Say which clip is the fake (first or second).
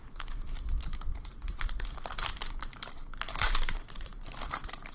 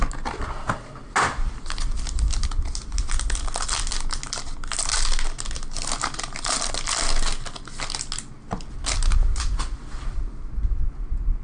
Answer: first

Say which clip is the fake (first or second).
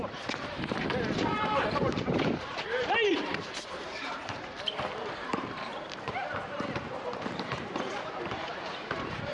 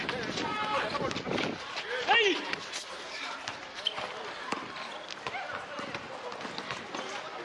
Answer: first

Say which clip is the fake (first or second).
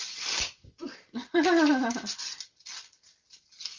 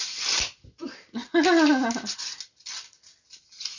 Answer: first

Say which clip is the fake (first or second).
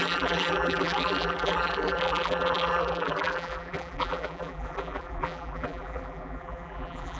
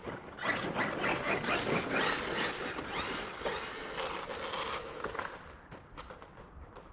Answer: first